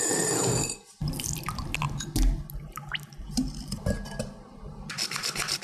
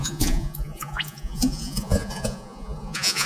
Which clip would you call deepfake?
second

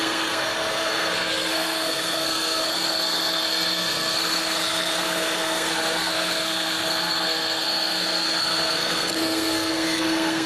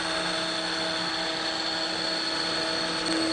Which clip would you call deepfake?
first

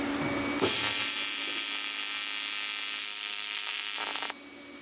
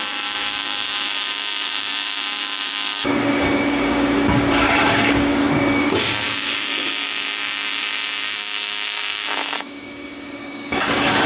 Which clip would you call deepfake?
second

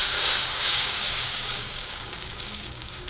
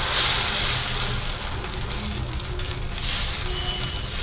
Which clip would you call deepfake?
first